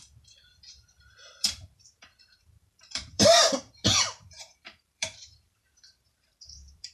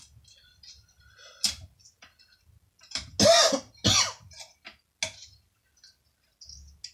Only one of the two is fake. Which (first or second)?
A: first